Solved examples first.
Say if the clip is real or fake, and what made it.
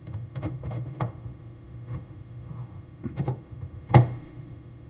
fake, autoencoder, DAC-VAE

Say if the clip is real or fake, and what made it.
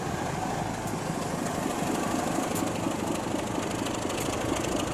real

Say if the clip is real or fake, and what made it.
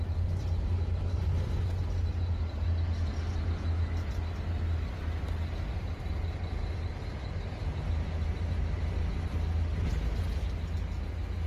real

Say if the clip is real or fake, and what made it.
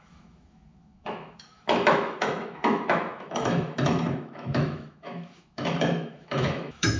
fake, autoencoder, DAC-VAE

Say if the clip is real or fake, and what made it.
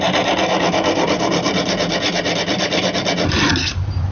real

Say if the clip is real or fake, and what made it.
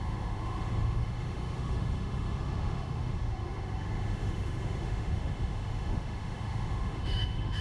fake, autoencoder, DAC-VAE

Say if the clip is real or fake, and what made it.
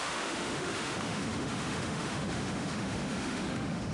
fake, autoencoder, DAC-VAE